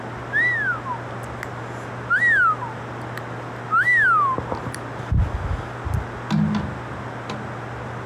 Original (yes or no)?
yes